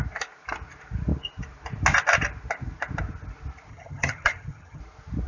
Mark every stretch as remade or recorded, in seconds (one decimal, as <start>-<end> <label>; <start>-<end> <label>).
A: 0.0-3.7 recorded; 3.7-4.8 remade; 4.8-5.3 recorded